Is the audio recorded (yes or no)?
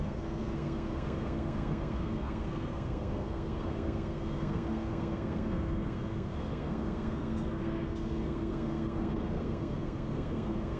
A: no